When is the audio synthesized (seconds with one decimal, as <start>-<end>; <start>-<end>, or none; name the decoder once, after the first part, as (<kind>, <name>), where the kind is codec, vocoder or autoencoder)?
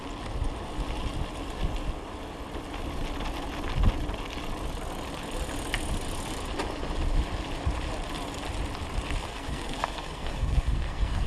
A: 9.2-11.3 (codec, SNAC)